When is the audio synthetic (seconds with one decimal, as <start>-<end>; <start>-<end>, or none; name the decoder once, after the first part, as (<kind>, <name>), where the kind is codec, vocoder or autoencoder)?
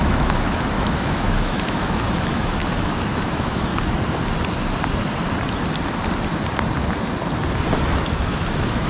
0.0-3.7 (autoencoder, DAC-VAE); 8.3-8.9